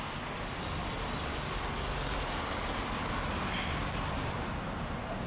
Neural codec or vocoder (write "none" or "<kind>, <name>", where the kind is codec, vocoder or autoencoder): none